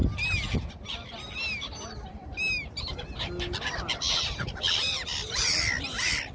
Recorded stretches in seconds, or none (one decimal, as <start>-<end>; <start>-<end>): 0.0-6.3